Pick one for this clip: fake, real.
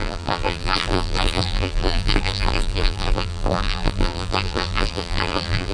fake